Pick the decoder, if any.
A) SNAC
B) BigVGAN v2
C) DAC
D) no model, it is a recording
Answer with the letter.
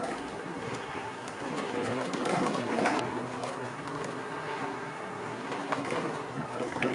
A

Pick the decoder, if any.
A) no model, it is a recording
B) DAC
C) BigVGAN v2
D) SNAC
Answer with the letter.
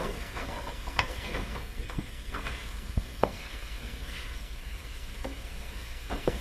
D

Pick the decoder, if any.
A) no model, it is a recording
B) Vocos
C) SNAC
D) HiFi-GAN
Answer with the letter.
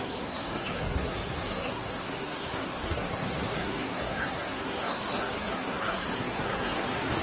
C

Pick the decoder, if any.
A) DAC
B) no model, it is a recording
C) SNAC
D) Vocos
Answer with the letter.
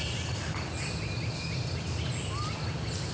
B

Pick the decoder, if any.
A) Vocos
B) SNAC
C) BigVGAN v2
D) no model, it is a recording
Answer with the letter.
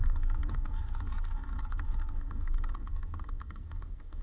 B